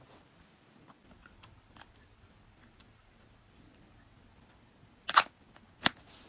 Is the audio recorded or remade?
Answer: recorded